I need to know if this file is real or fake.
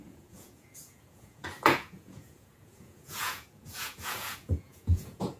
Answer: fake